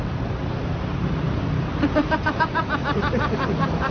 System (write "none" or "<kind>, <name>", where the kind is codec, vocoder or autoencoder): vocoder, BigVGAN v2